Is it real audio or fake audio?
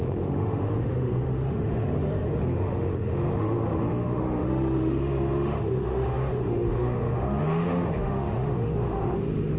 fake